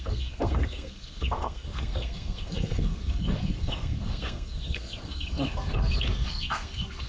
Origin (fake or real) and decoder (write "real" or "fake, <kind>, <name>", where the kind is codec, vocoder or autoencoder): fake, codec, SNAC